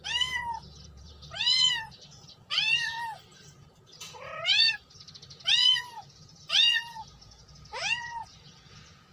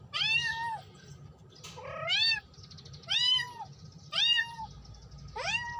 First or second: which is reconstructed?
first